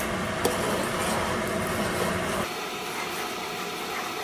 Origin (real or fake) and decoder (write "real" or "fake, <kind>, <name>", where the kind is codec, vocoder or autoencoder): real